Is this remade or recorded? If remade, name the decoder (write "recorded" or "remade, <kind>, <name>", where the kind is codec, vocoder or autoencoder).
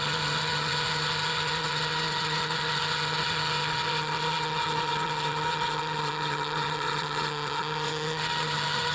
remade, vocoder, HiFi-GAN